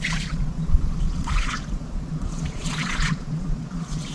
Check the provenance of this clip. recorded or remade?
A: remade